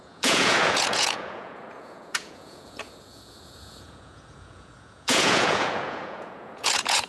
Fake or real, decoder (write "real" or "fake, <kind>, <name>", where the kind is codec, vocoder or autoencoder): fake, vocoder, Vocos